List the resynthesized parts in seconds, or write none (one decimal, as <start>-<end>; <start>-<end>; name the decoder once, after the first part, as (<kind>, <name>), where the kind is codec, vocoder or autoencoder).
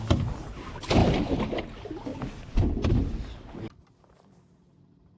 1.0-1.6 (vocoder, BigVGAN v2)